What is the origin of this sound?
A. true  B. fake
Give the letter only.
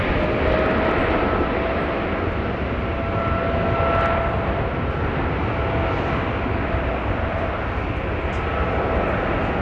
A